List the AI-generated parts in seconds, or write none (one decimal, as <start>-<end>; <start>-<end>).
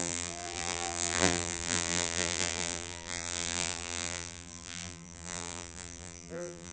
0.0-6.7